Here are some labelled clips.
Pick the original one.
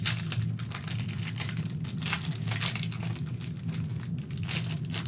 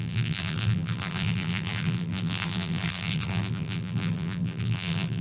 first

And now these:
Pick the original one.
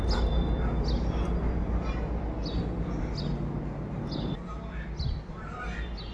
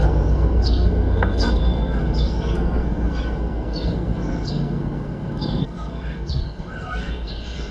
first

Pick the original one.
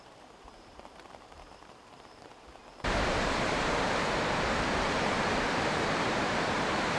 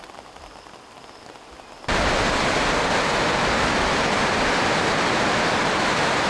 second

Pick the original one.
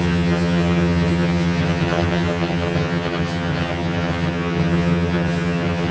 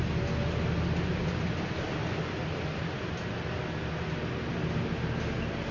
second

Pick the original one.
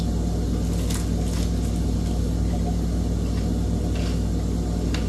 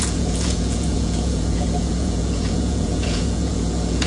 first